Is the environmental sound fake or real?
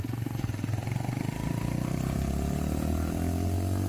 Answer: real